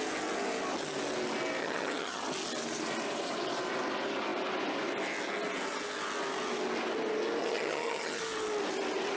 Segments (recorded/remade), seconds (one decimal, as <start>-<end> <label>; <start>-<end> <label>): 0.0-1.6 recorded; 1.6-2.2 remade; 2.2-7.4 recorded; 7.4-8.2 remade; 8.2-9.2 recorded